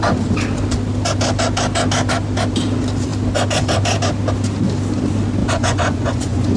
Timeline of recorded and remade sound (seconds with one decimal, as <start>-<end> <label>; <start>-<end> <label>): 0.0-5.4 recorded; 5.4-6.6 remade